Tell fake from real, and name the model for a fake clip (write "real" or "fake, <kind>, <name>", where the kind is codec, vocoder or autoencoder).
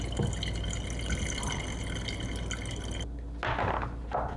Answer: real